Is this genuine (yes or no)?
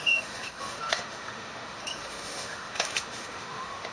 no